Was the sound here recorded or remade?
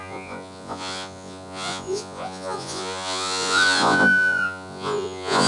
remade